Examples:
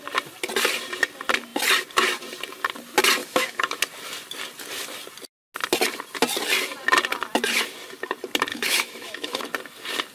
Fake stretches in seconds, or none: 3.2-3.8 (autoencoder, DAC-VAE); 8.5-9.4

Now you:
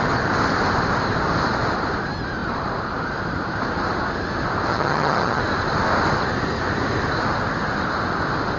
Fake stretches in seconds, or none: 4.7-5.4 (vocoder, HiFi-GAN)